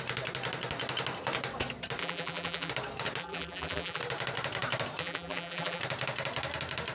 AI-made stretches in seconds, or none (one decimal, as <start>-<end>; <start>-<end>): 2.0-2.7; 3.2-4.0; 5.0-5.8